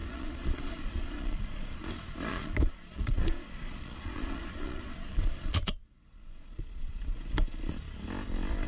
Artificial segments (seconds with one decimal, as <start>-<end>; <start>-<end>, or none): 0.0-1.9; 2.3-6.9

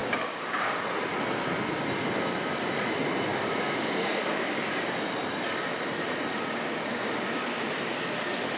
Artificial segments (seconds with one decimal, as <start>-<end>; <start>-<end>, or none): 0.0-0.8; 3.3-4.7; 6.3-7.1

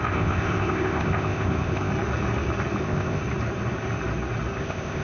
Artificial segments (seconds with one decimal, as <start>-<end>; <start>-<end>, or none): 0.0-1.9; 2.8-3.2; 4.6-5.0

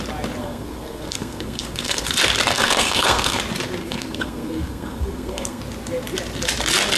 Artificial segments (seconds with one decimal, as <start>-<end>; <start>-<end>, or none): 0.4-2.1; 2.5-3.4; 3.8-5.6

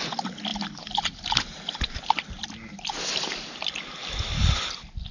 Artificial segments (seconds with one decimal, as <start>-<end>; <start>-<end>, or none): none

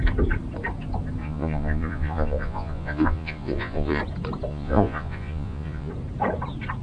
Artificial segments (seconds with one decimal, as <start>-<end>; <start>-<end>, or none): 1.2-4.0; 4.5-5.9